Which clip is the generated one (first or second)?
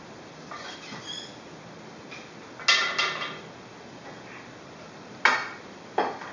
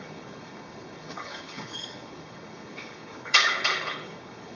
second